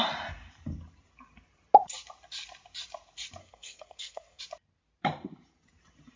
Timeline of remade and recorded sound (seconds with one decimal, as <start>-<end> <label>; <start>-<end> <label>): 0.0-3.4 recorded; 3.4-4.4 remade; 4.4-6.2 recorded